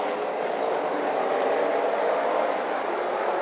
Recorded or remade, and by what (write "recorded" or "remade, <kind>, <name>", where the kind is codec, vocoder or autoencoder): recorded